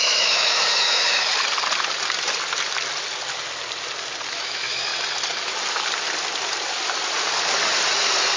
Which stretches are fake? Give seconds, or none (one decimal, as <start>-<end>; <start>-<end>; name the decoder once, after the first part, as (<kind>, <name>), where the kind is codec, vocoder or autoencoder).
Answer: 0.0-1.3 (autoencoder, DAC-VAE); 4.3-4.9